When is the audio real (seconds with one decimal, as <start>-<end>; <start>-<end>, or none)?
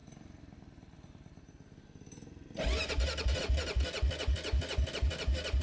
0.0-5.6